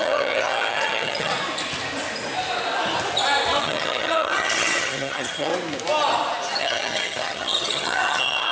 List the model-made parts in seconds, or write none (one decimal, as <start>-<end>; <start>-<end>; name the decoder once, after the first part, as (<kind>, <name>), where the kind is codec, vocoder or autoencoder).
0.0-1.3 (vocoder, HiFi-GAN); 3.6-5.5; 6.6-8.5